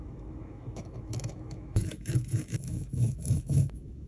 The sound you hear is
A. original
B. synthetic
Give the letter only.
B